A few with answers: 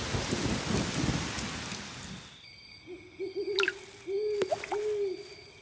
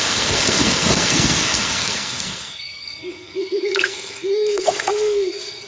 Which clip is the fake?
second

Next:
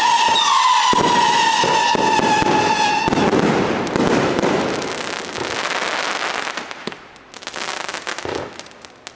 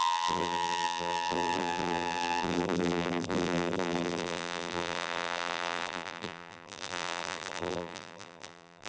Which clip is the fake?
second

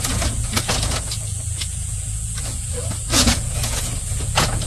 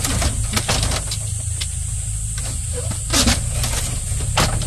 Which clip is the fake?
first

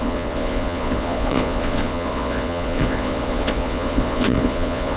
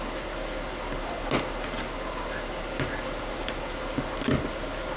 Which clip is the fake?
first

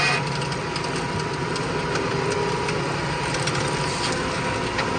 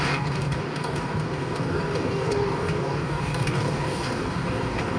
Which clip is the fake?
second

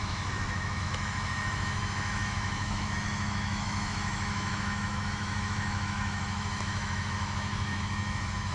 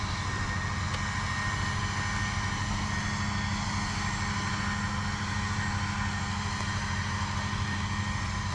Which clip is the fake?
first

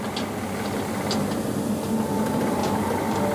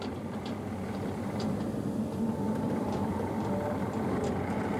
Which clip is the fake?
second